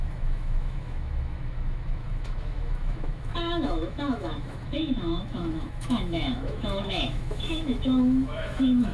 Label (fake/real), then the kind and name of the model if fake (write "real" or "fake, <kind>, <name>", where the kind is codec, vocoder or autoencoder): fake, autoencoder, DAC-VAE